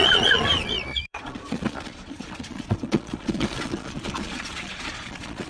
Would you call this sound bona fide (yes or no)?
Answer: no